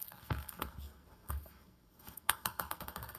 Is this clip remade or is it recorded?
remade